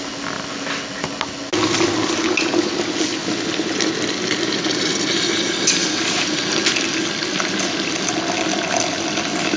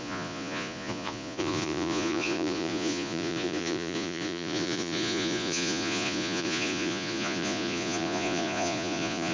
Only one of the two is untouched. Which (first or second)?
first